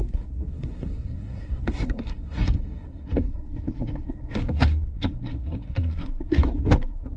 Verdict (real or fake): fake